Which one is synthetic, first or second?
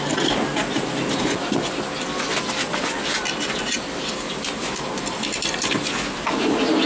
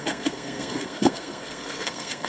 second